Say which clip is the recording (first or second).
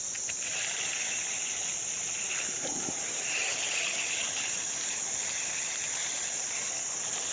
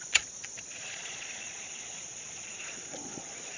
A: first